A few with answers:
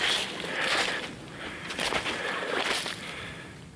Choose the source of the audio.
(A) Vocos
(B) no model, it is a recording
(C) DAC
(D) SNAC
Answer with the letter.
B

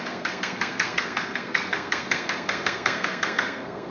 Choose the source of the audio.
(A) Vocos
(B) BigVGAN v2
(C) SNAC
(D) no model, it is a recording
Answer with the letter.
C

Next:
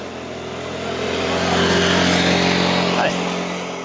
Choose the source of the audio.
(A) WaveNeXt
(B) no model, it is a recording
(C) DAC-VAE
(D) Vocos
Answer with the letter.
B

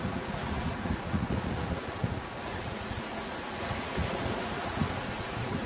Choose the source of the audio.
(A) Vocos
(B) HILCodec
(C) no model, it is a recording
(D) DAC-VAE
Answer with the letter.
A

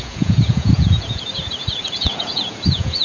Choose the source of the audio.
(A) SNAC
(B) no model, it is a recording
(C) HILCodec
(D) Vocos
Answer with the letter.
D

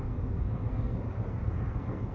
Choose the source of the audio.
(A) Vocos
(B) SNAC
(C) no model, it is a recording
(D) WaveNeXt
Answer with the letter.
B